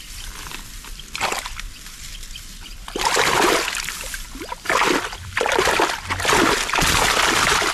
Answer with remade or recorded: recorded